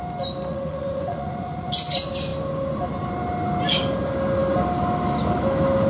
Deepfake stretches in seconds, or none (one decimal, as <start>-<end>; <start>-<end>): 0.5-1.7